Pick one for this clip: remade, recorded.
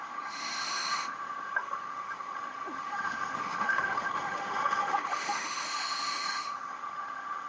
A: remade